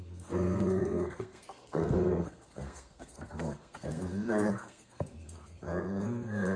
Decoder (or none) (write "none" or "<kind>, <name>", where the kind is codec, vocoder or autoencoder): codec, SNAC